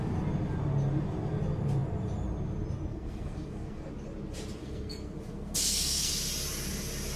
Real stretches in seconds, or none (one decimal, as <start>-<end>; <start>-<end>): 0.0-2.9; 3.9-4.6; 6.1-7.2